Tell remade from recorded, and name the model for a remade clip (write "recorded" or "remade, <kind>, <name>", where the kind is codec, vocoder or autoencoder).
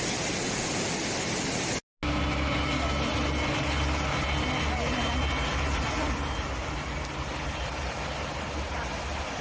recorded